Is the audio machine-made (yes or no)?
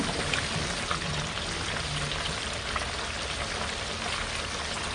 no